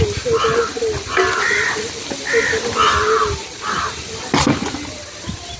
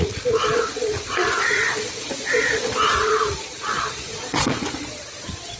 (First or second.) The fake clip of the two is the second